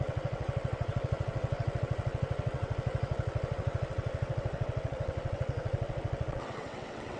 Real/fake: fake